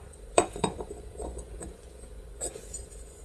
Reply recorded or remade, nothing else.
remade